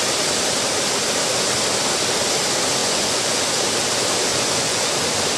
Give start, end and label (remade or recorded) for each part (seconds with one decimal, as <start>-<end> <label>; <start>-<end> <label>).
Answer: 0.0-2.8 recorded; 2.8-3.4 remade; 3.4-4.3 recorded; 4.3-4.9 remade; 4.9-5.4 recorded